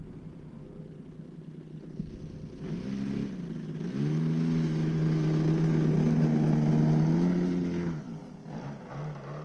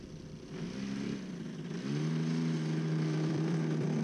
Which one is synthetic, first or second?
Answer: second